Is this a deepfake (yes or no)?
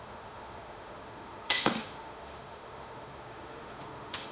yes